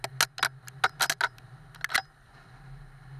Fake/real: real